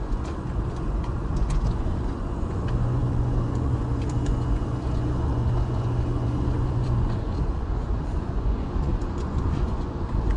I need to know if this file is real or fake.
fake